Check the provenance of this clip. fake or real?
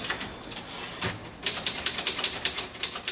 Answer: real